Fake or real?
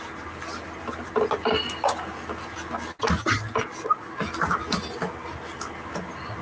real